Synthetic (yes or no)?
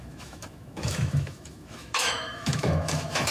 yes